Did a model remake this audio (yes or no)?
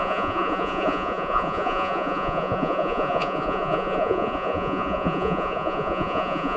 yes